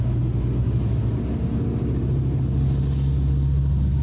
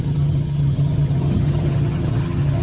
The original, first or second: first